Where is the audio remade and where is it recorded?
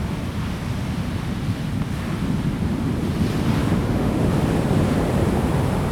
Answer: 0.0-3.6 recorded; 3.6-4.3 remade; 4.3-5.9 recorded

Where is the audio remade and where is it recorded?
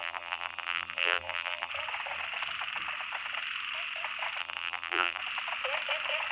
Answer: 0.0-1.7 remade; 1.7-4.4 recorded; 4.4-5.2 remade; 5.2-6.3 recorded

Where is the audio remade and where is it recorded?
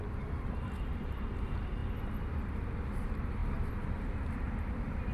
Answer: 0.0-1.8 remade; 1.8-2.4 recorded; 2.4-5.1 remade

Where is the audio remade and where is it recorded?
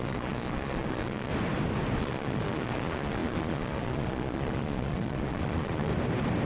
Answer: 0.0-1.3 remade; 1.3-2.0 recorded; 2.0-5.9 remade; 5.9-6.5 recorded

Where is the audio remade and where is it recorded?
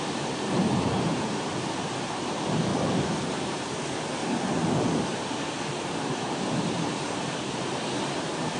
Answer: 0.0-2.7 remade; 2.7-3.3 recorded; 3.3-4.2 remade; 4.2-5.7 recorded; 5.7-8.6 remade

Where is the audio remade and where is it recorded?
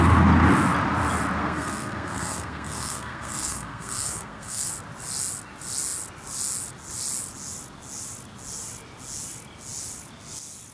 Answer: 0.0-1.4 recorded; 1.4-4.7 remade; 4.7-10.7 recorded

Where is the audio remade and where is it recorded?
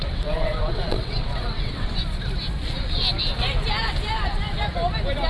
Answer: 0.0-2.0 remade; 2.0-5.3 recorded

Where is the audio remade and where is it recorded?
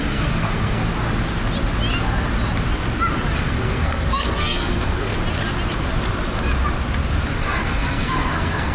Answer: 0.0-0.8 remade; 0.8-3.4 recorded; 3.4-5.1 remade; 5.1-7.4 recorded; 7.4-8.7 remade